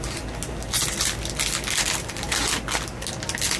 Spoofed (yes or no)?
no